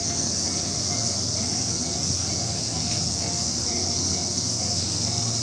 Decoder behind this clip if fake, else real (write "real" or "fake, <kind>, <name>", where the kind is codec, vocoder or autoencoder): fake, codec, SNAC